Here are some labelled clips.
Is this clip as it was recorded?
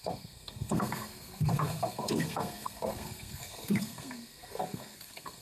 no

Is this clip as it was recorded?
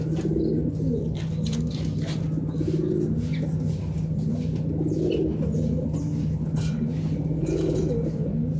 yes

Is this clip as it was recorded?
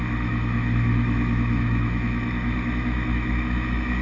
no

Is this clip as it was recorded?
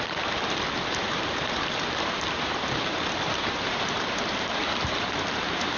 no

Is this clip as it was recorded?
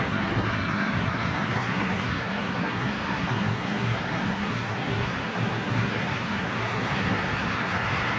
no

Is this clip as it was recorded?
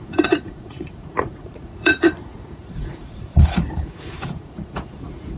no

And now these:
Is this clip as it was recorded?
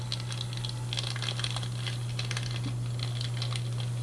yes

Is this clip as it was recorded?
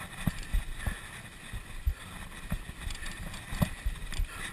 yes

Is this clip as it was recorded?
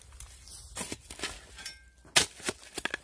yes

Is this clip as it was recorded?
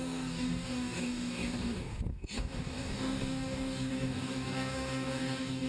no